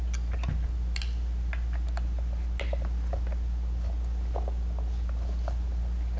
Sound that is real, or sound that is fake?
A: real